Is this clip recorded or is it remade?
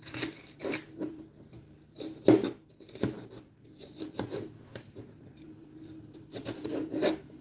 remade